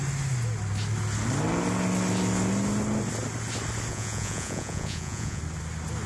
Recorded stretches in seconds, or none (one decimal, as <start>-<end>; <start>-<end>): 0.0-3.9; 5.4-6.1